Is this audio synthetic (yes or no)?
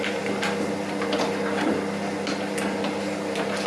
no